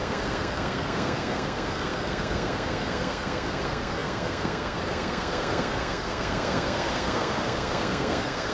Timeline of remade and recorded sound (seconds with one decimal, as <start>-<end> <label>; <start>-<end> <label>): 0.0-8.5 remade

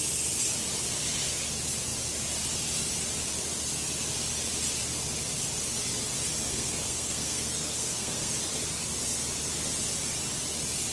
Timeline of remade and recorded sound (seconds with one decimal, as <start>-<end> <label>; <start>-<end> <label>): 0.0-6.5 recorded; 6.5-8.3 remade; 8.3-10.9 recorded

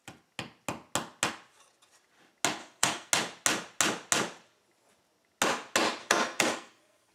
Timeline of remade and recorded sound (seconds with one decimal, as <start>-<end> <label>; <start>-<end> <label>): 0.0-2.6 recorded; 2.6-3.1 remade; 3.1-6.0 recorded; 6.0-7.1 remade

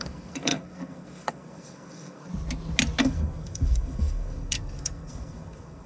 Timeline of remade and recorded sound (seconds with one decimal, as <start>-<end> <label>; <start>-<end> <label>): 0.0-2.3 remade; 2.3-3.0 recorded; 3.0-5.9 remade

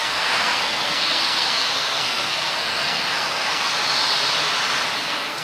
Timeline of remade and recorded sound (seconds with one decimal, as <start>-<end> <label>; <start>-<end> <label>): 0.0-3.7 remade; 3.7-5.0 recorded; 5.0-5.4 remade

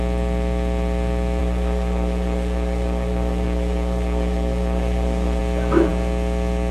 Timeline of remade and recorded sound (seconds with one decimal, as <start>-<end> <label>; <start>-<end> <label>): 0.0-1.4 recorded; 1.4-5.4 remade; 5.4-6.7 recorded

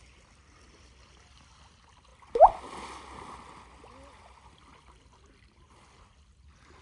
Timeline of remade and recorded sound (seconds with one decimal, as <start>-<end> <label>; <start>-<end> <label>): 0.0-6.8 recorded

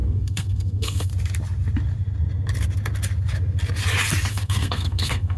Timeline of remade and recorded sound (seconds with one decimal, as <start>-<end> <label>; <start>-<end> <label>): 0.0-1.1 remade; 1.1-4.3 recorded; 4.3-5.4 remade